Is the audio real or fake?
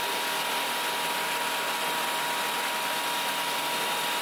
real